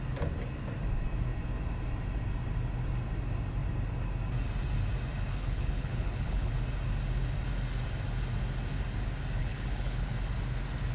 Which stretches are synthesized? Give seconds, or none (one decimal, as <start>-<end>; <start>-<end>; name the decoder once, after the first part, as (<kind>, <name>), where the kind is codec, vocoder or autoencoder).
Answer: 5.3-6.5 (codec, HILCodec); 9.4-10.1